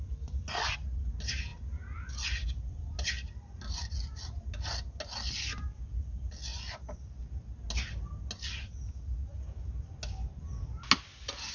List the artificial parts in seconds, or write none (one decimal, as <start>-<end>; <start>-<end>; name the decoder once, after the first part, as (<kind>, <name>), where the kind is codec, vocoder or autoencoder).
none